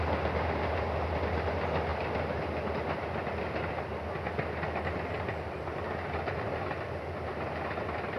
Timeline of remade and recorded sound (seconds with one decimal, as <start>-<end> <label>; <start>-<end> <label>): 0.0-8.2 recorded